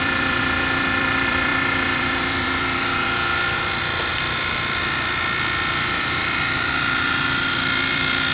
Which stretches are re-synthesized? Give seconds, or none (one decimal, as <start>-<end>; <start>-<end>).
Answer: 0.0-8.3